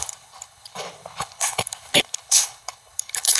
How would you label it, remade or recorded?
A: remade